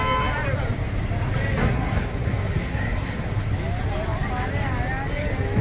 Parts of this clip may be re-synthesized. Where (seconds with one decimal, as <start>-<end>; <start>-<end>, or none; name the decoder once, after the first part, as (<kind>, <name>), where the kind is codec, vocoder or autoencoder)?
1.6-3.4 (codec, SNAC)